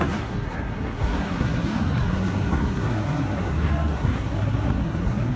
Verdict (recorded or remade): remade